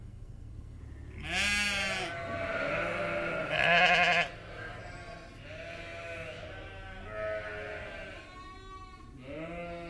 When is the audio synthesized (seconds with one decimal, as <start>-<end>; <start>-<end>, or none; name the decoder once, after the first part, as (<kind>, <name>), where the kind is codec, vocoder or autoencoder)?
0.0-0.8 (codec, SNAC)